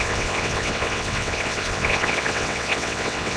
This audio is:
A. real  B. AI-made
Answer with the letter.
B